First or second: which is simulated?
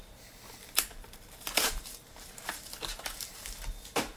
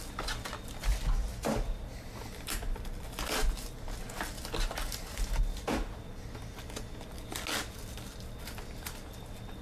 first